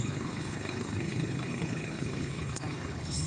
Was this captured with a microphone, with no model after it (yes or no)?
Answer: no